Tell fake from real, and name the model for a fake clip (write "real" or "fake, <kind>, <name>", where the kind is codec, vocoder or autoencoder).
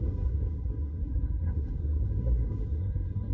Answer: fake, codec, SNAC